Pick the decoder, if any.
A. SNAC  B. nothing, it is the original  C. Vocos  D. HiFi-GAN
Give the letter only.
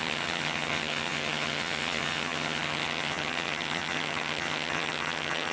D